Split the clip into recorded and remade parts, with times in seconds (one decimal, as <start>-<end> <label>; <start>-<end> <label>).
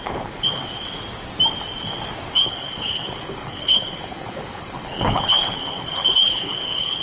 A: 0.0-0.6 remade; 0.6-2.3 recorded; 2.3-7.0 remade